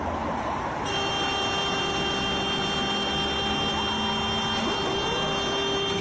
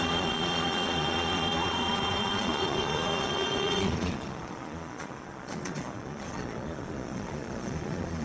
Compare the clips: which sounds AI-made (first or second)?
second